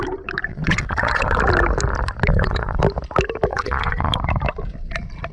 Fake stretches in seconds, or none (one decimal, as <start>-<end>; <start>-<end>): 0.5-1.4; 2.3-2.8; 3.5-4.1